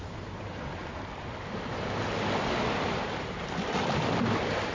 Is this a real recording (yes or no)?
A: yes